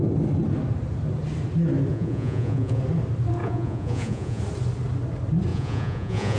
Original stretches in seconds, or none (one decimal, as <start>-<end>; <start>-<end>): 0.0-1.9; 2.8-3.4; 4.4-5.5